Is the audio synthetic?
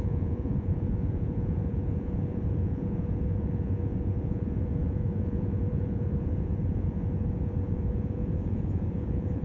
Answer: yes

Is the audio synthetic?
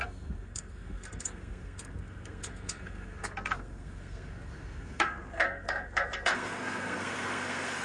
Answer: yes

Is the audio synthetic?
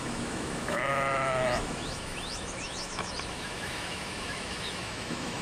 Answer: yes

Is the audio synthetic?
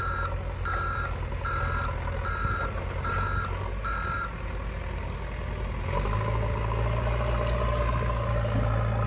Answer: no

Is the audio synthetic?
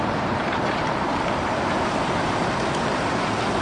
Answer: yes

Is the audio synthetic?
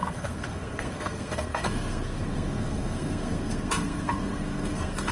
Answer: yes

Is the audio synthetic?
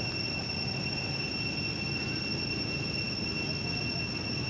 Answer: no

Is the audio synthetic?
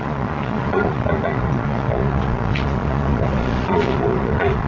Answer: yes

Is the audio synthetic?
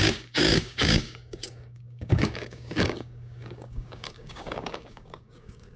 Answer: yes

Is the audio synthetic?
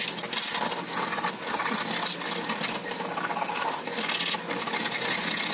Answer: no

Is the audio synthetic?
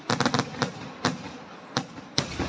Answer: no